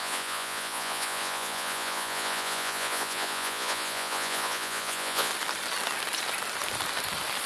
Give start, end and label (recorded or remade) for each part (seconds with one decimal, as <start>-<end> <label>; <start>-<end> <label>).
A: 0.0-5.3 remade; 5.3-7.5 recorded